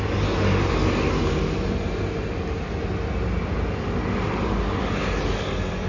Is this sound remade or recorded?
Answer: recorded